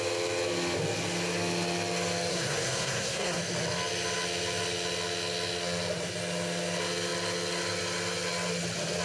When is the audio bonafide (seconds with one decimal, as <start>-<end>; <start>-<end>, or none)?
0.0-2.3; 3.4-9.0